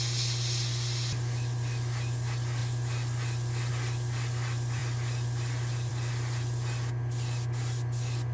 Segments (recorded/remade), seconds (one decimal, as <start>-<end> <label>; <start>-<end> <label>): 0.0-8.3 recorded